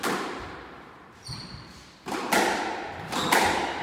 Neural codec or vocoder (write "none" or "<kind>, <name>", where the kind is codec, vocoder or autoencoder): none